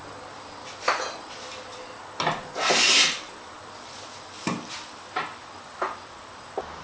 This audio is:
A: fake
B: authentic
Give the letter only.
B